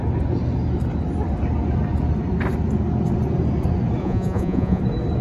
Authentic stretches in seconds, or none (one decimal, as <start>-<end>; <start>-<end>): 0.0-4.0; 4.8-5.2